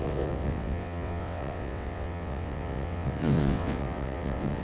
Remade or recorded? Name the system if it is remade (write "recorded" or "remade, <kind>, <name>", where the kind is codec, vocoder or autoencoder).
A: remade, vocoder, WaveNeXt